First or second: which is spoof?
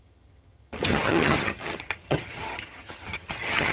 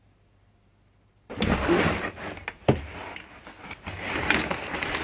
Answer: first